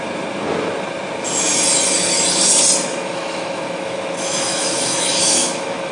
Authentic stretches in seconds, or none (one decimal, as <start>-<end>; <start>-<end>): 0.0-2.9